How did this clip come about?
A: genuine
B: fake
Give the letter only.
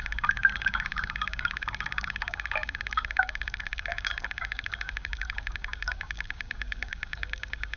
B